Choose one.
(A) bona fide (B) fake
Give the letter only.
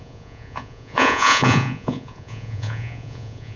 B